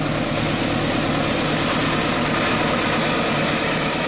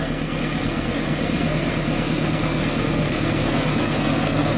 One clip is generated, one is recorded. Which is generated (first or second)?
second